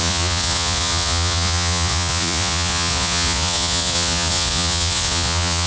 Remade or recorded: remade